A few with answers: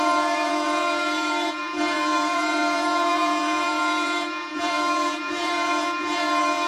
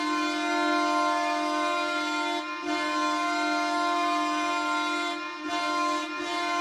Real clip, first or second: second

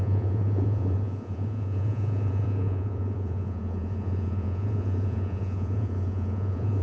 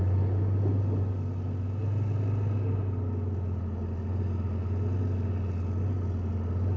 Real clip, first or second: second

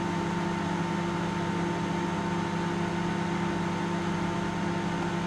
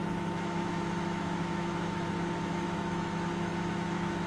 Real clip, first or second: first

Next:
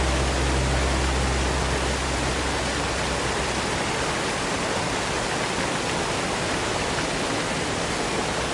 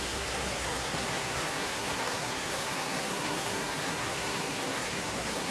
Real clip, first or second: first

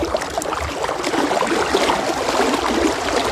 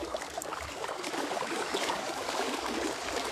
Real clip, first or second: first